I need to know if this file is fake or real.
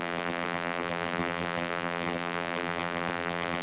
fake